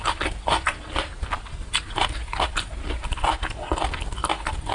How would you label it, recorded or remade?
recorded